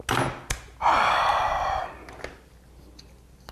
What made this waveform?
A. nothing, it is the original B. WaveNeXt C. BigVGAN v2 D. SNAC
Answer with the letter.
A